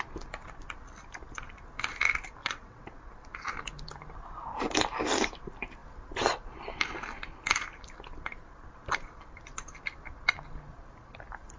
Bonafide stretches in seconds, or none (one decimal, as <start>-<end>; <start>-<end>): 0.0-2.4; 3.0-11.6